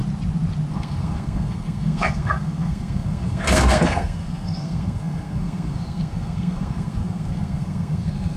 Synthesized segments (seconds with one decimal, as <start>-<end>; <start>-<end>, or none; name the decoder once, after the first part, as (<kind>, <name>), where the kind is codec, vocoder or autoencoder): 0.7-8.4 (codec, SNAC)